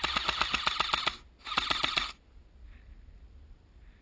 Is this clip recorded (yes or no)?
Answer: yes